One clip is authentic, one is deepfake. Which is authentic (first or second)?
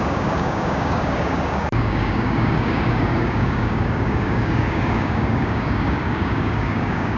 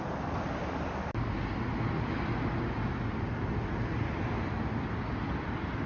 second